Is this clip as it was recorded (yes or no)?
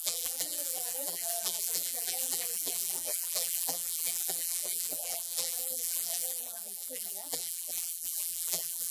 no